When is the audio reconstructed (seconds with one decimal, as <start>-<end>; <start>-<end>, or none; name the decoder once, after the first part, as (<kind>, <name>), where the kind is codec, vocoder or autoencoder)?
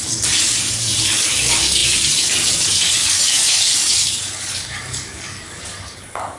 0.0-6.4 (codec, DAC)